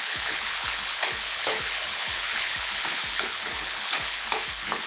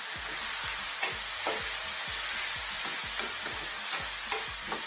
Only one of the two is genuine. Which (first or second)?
second